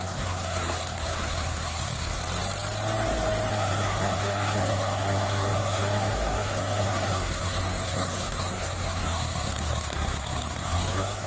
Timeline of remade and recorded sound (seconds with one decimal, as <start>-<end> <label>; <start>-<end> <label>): 0.0-2.2 remade; 2.2-3.5 recorded; 3.5-11.3 remade